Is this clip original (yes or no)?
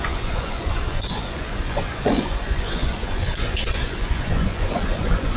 no